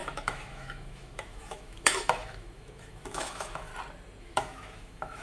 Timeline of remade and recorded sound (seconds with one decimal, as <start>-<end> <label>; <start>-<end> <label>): 0.0-3.7 remade; 3.7-4.2 recorded; 4.2-5.2 remade

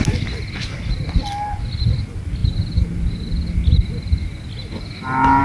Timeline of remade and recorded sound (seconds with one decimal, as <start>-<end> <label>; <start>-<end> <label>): 0.0-5.4 recorded

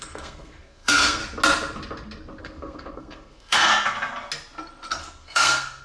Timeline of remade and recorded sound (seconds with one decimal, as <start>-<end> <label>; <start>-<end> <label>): 0.0-1.2 remade; 1.2-2.4 recorded; 2.4-3.7 remade; 3.7-5.0 recorded; 5.0-5.8 remade

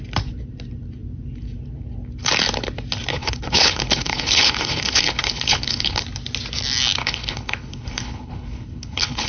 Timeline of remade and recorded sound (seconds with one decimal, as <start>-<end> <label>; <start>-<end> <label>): 0.0-3.1 recorded; 3.1-6.0 remade; 6.0-7.0 recorded; 7.0-9.3 remade

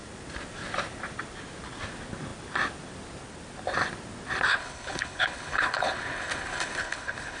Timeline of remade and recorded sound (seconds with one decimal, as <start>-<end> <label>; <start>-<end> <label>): 0.0-4.5 recorded; 4.5-7.4 remade

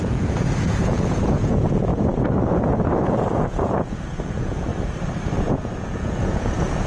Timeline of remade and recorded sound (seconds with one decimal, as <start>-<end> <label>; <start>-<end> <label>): 0.0-1.9 remade; 1.9-2.4 recorded; 2.4-4.7 remade; 4.7-5.5 recorded; 5.5-6.9 remade

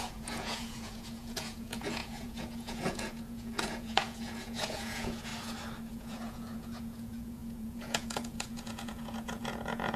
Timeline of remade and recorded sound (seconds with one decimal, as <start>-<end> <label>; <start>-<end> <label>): 0.0-5.3 remade; 5.3-5.9 recorded; 5.9-10.0 remade